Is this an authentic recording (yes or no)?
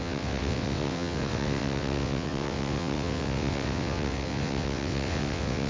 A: no